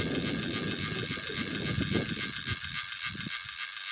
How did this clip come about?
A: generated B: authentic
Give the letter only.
B